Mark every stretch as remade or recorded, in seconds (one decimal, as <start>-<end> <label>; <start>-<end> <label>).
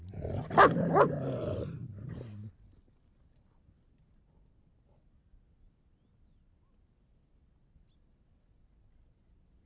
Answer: 0.0-9.7 recorded